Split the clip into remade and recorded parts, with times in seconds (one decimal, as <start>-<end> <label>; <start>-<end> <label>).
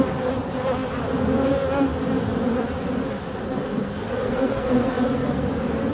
0.0-3.5 recorded; 3.5-5.5 remade; 5.5-5.9 recorded